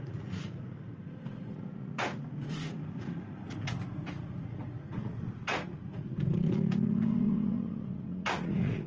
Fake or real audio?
fake